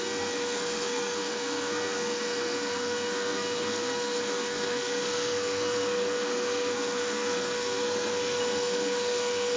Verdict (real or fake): fake